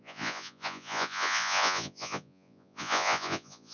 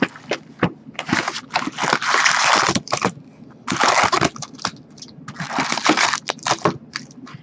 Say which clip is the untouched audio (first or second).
second